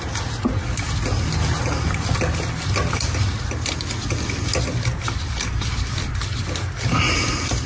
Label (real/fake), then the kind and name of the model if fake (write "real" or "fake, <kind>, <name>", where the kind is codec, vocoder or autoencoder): real